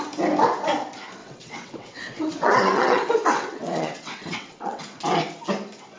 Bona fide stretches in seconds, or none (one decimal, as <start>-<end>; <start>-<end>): 0.0-1.2; 4.8-6.0